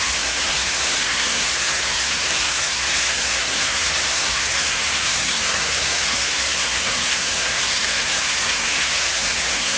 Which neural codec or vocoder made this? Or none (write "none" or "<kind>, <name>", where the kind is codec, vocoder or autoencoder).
codec, SNAC